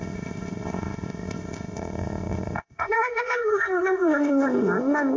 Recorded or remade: remade